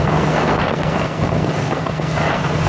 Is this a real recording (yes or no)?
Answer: no